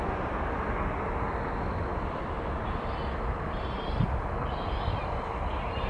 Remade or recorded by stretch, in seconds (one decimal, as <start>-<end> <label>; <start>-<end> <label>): 0.0-1.9 recorded; 1.9-5.3 remade; 5.3-5.9 recorded